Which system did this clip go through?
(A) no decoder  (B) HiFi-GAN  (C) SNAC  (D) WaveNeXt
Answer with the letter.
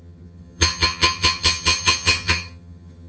B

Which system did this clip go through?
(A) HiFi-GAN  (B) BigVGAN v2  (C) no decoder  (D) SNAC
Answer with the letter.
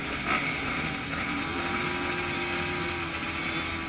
C